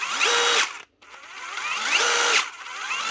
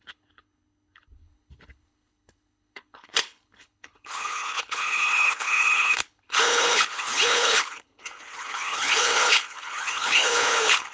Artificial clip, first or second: second